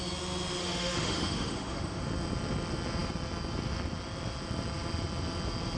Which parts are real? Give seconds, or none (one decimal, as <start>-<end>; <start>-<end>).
0.0-0.6; 2.0-5.8